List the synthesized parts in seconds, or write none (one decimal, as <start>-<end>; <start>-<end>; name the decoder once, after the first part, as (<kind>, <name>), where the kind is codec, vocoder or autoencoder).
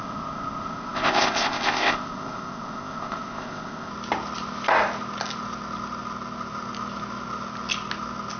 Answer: 0.0-3.9 (codec, ZipCodec)